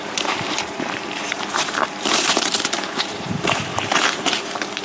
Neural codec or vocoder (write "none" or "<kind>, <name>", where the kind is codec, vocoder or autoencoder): vocoder, BigVGAN v2